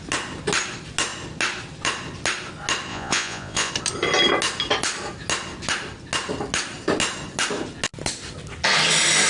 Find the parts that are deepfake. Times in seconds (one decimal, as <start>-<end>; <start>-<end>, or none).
2.9-3.7